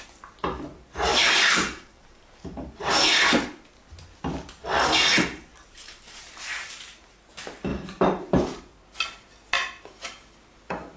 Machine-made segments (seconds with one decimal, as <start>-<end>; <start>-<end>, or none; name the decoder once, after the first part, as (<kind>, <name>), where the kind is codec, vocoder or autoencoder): 1.1-2.7 (vocoder, BigVGAN v2); 5.5-7.3; 7.7-8.4